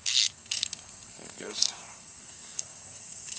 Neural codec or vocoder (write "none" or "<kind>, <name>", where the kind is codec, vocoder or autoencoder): codec, SNAC